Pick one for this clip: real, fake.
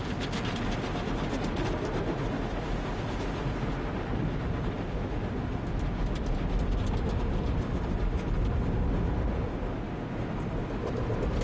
real